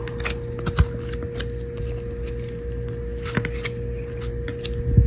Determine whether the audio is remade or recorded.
recorded